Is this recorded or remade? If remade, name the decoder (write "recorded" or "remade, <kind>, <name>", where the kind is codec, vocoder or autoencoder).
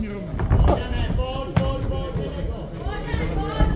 recorded